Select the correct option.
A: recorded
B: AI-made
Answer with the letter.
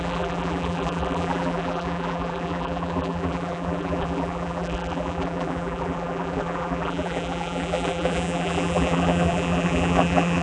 B